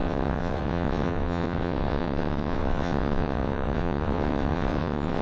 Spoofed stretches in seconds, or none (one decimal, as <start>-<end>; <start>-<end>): 0.0-5.2